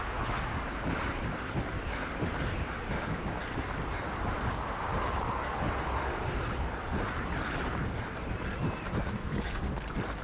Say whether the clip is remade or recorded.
recorded